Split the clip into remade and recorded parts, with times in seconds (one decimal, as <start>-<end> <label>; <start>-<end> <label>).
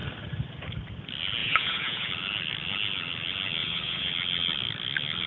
0.0-1.4 recorded; 1.4-2.1 remade; 2.1-3.6 recorded; 3.6-4.1 remade; 4.1-5.3 recorded